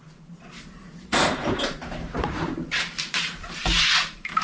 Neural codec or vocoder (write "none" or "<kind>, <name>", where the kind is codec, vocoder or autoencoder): vocoder, BigVGAN v2